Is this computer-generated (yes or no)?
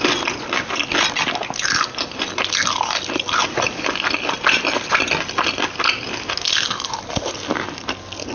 no